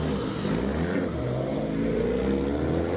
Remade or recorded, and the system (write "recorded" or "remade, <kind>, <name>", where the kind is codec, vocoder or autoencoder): recorded